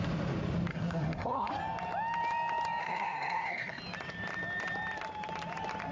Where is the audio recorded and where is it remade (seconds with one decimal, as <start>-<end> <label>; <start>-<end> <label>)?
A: 0.0-0.7 recorded; 0.7-1.5 remade; 1.5-2.8 recorded; 2.8-3.8 remade; 3.8-5.9 recorded